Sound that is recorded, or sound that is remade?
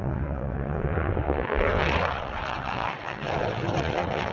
remade